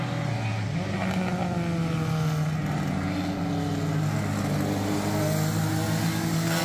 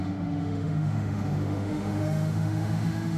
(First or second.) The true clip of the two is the first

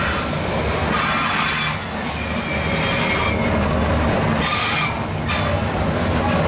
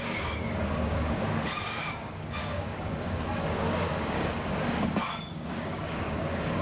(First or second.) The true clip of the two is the first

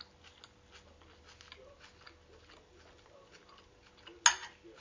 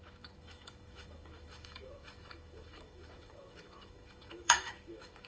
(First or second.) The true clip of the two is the first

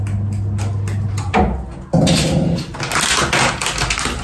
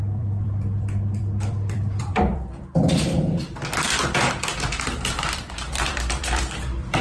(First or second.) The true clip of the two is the first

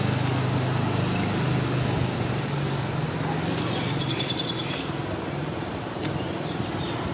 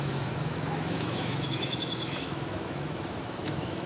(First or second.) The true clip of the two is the first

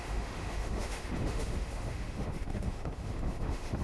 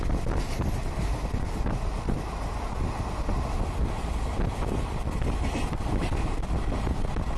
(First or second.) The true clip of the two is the second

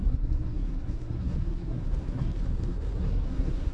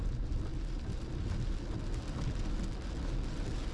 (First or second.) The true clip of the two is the second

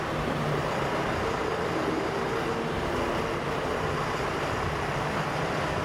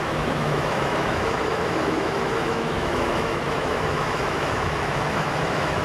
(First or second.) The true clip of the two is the first